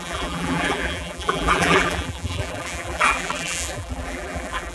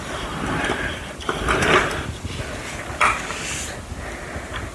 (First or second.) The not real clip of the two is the first